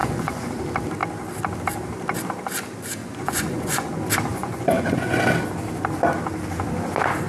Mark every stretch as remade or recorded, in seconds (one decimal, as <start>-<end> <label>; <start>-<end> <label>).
0.0-0.5 remade; 0.5-3.0 recorded; 3.0-3.9 remade; 3.9-4.3 recorded; 4.3-5.2 remade; 5.2-7.3 recorded